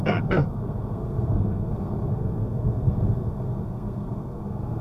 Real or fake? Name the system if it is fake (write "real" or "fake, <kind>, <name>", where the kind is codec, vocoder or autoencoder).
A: fake, codec, SNAC